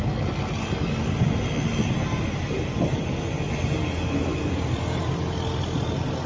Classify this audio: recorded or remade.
recorded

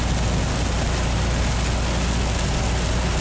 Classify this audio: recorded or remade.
recorded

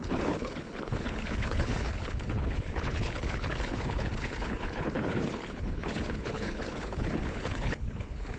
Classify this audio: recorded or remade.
remade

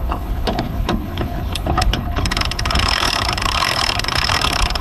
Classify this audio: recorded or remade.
remade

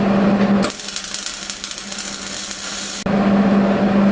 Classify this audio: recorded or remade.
recorded